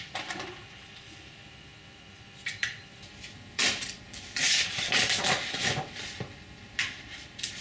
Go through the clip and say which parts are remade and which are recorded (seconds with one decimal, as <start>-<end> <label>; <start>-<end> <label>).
0.0-7.6 remade